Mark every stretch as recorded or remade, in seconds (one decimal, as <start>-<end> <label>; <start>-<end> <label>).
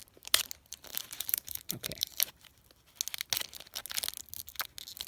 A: 0.0-0.9 recorded; 0.9-2.5 remade; 2.5-5.1 recorded